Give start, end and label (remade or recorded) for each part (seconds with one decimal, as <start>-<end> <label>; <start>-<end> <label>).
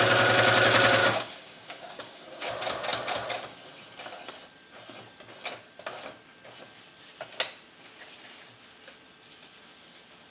0.0-1.0 recorded; 1.0-2.5 remade; 2.5-10.3 recorded